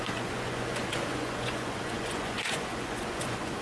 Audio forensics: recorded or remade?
remade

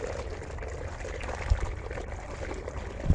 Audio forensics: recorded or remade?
recorded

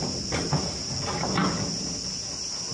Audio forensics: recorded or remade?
recorded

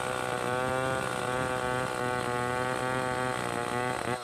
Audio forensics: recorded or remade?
recorded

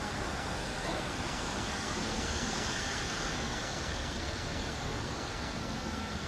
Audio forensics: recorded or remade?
remade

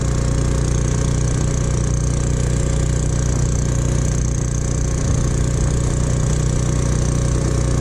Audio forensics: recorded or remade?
recorded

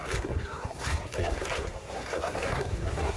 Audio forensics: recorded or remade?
remade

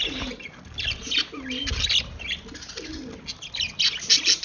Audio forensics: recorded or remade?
recorded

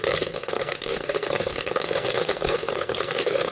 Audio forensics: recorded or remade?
remade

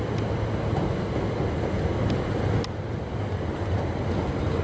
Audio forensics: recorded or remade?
recorded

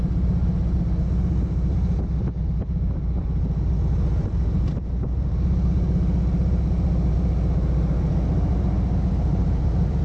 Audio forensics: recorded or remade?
recorded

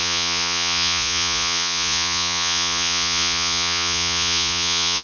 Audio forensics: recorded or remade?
remade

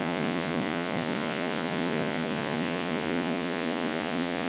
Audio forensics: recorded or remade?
remade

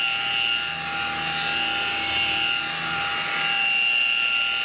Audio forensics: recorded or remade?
recorded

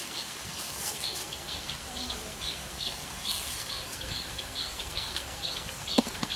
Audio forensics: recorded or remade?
remade